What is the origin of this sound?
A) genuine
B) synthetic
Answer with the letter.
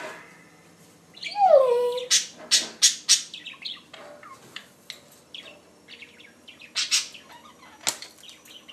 A